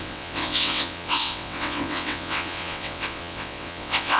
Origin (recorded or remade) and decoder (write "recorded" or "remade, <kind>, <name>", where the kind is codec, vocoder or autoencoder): remade, vocoder, WaveNeXt